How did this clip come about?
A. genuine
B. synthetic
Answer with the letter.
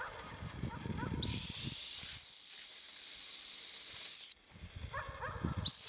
B